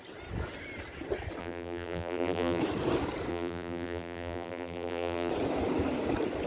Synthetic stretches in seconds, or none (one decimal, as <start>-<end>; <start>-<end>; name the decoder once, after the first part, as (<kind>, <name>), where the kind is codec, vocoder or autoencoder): 1.4-2.6 (vocoder, BigVGAN v2); 3.3-5.3